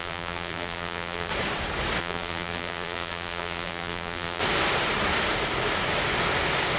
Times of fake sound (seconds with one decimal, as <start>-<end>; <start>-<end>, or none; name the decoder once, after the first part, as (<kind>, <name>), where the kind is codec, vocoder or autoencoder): 0.0-1.3 (vocoder, BigVGAN v2); 2.0-4.4